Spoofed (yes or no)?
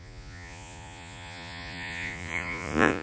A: yes